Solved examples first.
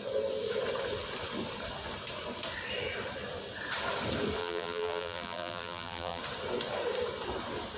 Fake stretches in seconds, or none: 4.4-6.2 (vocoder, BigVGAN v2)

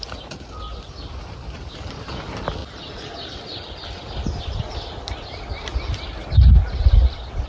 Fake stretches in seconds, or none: 0.0-2.6 (vocoder, BigVGAN v2); 4.4-5.7; 6.3-7.5

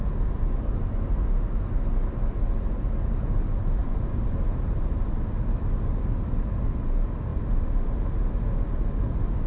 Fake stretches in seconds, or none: 3.8-5.0 (vocoder, BigVGAN v2); 7.3-8.6